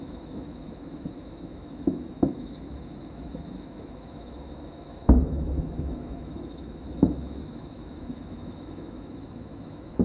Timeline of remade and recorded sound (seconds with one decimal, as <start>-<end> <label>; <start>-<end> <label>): 0.0-10.0 remade